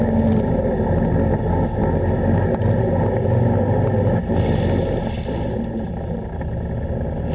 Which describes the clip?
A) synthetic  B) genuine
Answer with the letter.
B